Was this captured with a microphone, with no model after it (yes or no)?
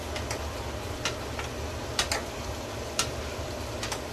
yes